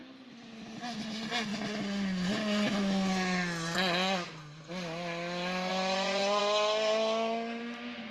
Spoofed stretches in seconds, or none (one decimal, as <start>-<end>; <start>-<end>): 5.7-6.4